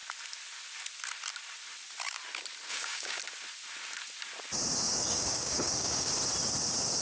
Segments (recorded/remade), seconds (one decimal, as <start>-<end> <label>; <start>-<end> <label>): 0.0-2.7 recorded; 2.7-3.2 remade; 3.2-4.9 recorded; 4.9-6.1 remade; 6.1-7.0 recorded

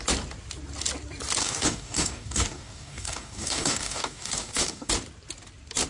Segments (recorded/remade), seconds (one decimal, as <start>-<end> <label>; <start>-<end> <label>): 0.0-1.4 recorded; 1.4-4.9 remade; 4.9-5.9 recorded

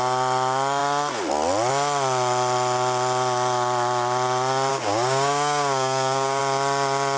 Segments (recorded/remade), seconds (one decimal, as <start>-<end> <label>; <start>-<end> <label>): 0.0-4.7 recorded; 4.7-6.4 remade; 6.4-7.2 recorded